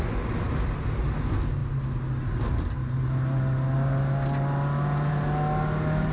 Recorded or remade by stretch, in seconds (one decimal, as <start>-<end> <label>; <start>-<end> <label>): 0.0-6.1 recorded